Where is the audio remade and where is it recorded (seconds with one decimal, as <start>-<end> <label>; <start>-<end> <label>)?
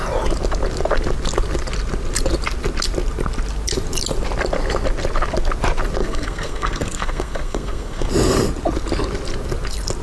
0.0-6.0 recorded; 6.0-8.1 remade; 8.1-10.0 recorded